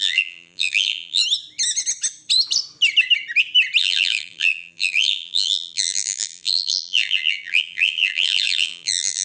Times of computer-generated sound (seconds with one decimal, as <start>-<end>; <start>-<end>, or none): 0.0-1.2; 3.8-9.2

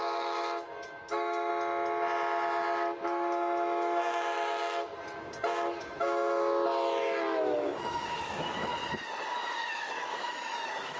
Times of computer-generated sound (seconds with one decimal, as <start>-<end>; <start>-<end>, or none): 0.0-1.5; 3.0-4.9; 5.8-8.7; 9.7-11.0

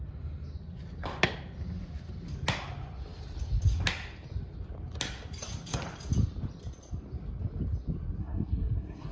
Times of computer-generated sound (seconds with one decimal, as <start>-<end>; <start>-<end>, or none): 8.2-9.1

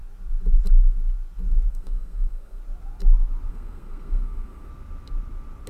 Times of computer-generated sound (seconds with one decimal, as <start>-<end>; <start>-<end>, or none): 1.7-2.6; 3.5-4.7